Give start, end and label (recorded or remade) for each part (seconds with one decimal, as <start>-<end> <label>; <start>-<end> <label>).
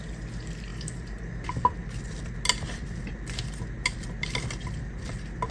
0.0-0.7 recorded; 0.7-1.2 remade; 1.2-5.5 recorded